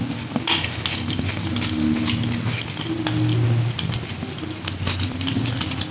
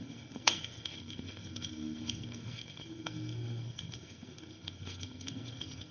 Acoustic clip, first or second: first